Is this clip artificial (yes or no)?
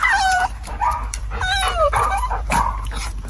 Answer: yes